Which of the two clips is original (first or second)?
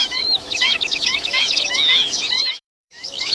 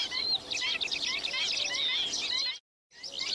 second